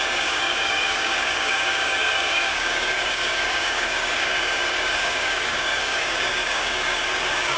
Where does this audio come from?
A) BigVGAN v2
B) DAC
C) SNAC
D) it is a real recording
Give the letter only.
B